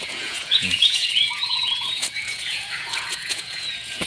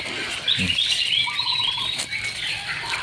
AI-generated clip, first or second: first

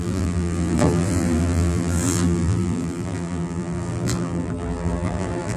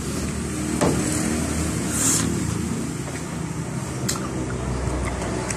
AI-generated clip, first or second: first